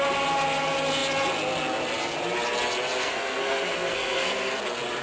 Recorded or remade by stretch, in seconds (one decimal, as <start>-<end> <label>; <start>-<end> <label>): 0.0-3.0 recorded; 3.0-4.5 remade; 4.5-5.0 recorded